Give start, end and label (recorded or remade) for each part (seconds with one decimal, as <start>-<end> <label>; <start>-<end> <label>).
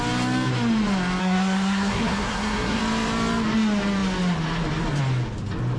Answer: 0.0-1.2 recorded; 1.2-2.8 remade; 2.8-5.8 recorded